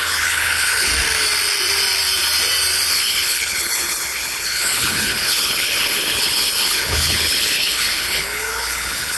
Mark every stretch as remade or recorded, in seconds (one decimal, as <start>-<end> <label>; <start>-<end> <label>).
0.0-0.9 remade; 0.9-2.9 recorded; 2.9-9.2 remade

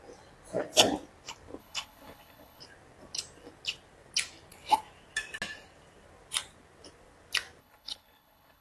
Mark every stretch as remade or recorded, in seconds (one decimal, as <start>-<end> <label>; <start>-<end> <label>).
0.0-1.6 recorded; 1.6-2.6 remade; 2.6-7.6 recorded; 7.6-8.6 remade

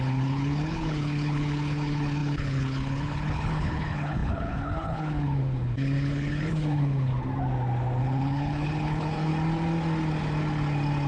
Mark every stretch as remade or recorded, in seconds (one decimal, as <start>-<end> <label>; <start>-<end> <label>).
0.0-7.1 remade; 7.1-8.0 recorded; 8.0-9.3 remade; 9.3-11.1 recorded

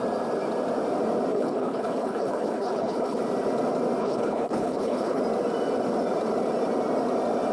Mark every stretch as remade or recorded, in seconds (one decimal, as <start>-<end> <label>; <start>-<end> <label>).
0.0-1.3 recorded; 1.3-3.2 remade; 3.2-4.0 recorded; 4.0-5.2 remade; 5.2-7.5 recorded

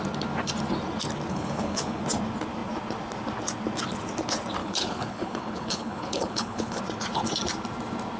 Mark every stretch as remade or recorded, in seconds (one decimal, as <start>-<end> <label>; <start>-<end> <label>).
0.0-1.3 recorded; 1.3-2.0 remade; 2.0-4.6 recorded; 4.6-6.8 remade; 6.8-8.2 recorded

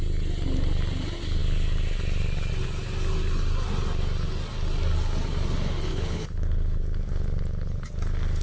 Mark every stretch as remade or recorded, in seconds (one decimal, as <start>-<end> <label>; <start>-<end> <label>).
0.0-5.9 recorded; 5.9-6.8 remade; 6.8-8.4 recorded

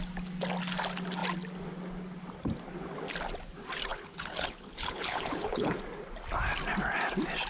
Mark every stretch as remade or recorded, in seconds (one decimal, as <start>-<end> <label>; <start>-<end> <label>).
0.0-3.9 recorded; 3.9-5.8 remade; 5.8-7.5 recorded